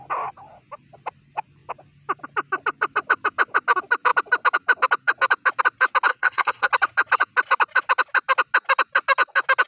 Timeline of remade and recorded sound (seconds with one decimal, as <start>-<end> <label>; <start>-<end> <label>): 0.0-6.1 recorded; 6.1-6.7 remade; 6.7-9.7 recorded